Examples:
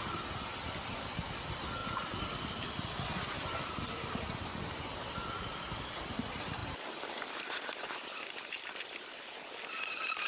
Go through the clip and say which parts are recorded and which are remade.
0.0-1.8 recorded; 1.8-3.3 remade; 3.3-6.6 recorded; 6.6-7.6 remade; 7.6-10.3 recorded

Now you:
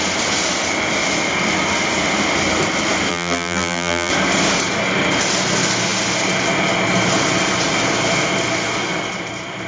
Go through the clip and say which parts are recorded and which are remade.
0.0-3.1 recorded; 3.1-4.1 remade; 4.1-9.7 recorded

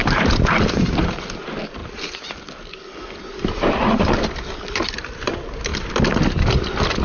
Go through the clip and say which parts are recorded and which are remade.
0.0-1.8 recorded; 1.8-4.9 remade; 4.9-5.7 recorded; 5.7-6.6 remade; 6.6-7.0 recorded